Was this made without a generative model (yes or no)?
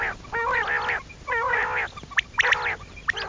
yes